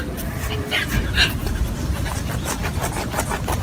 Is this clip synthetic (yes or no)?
no